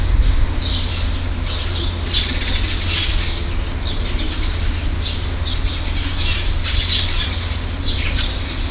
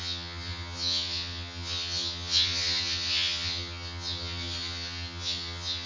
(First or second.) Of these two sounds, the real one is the first